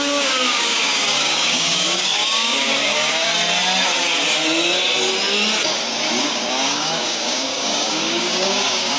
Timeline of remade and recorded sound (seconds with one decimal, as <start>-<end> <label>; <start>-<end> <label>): 0.0-3.3 remade; 3.3-6.2 recorded; 6.2-9.0 remade

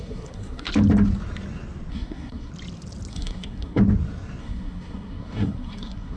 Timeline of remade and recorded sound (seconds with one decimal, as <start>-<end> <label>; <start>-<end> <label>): 0.0-0.7 remade; 0.7-1.9 recorded; 1.9-2.5 remade; 2.5-3.1 recorded; 3.1-3.8 remade; 3.8-4.4 recorded; 4.4-6.2 remade

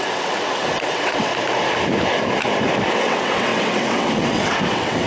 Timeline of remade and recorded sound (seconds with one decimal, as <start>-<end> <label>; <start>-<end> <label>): 0.0-1.3 remade; 1.3-2.9 recorded; 2.9-5.1 remade